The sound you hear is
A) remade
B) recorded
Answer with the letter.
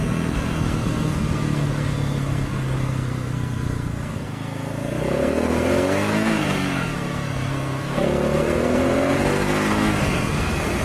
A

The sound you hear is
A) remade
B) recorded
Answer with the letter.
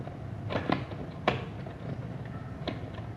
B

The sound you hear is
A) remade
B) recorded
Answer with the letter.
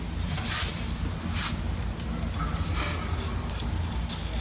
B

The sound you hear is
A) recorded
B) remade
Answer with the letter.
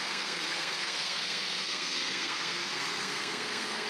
B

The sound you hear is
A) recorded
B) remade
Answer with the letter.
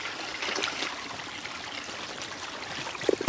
A